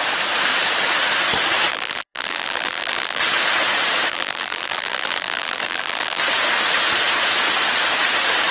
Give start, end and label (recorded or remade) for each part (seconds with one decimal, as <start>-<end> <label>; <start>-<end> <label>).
0.0-1.7 recorded; 1.7-3.2 remade; 3.2-4.1 recorded; 4.1-6.2 remade; 6.2-8.5 recorded